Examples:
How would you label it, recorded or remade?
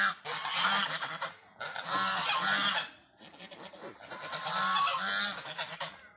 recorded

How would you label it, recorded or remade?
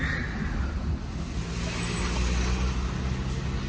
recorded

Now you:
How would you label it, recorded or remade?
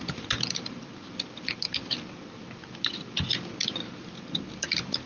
recorded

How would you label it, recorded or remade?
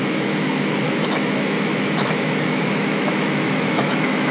remade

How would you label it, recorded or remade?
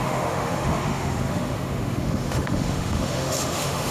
remade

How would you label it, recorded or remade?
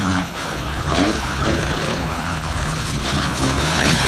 remade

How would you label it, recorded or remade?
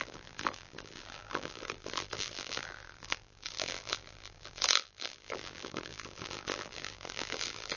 remade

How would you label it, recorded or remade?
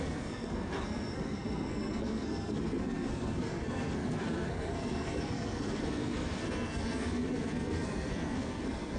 remade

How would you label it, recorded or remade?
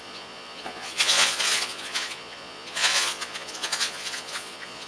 remade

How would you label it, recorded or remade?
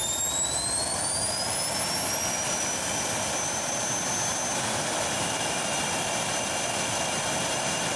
recorded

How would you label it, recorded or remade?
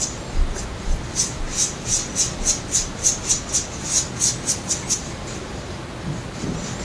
recorded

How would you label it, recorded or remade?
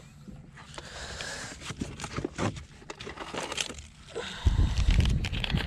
recorded